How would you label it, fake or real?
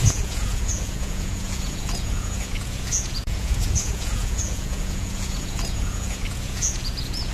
fake